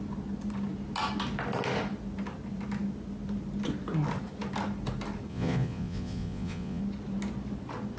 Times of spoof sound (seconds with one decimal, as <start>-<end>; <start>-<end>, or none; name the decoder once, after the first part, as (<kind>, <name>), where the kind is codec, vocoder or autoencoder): 5.3-6.8 (vocoder, Vocos)